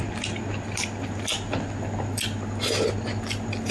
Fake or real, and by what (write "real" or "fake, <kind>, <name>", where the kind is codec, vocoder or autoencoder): real